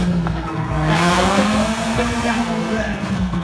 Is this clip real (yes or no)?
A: no